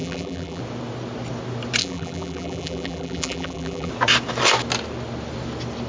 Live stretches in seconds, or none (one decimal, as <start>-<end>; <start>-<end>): 0.6-1.8; 3.9-5.9